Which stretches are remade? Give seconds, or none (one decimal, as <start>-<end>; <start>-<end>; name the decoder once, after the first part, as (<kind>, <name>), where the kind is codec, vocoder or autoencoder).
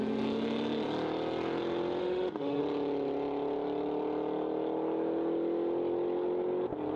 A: 2.0-2.6 (autoencoder, DAC-VAE)